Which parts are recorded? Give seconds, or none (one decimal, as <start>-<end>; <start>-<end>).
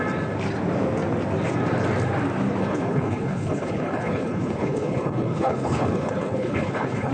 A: 0.0-2.6